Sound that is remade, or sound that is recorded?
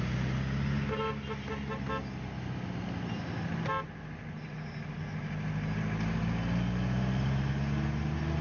recorded